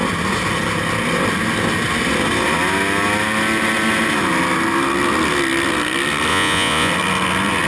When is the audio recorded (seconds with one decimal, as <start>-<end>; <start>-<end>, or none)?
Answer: 0.0-6.3; 6.9-7.7